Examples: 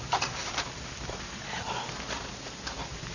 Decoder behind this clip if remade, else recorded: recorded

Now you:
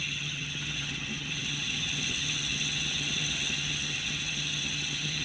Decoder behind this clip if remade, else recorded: remade, vocoder, HiFi-GAN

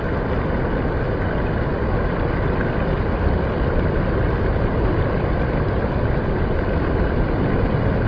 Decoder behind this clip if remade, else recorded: recorded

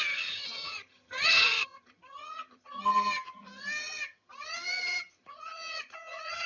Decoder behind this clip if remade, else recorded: remade, vocoder, HiFi-GAN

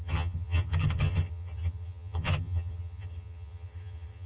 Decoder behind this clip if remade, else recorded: remade, vocoder, HiFi-GAN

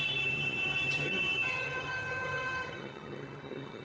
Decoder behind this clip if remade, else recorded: remade, vocoder, HiFi-GAN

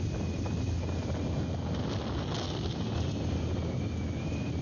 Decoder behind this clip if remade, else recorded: recorded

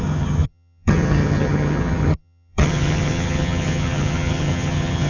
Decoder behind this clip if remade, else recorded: remade, vocoder, HiFi-GAN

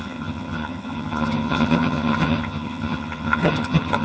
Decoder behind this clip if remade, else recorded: remade, vocoder, HiFi-GAN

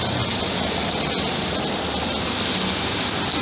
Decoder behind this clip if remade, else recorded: recorded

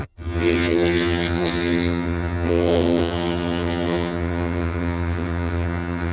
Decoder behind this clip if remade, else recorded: remade, vocoder, HiFi-GAN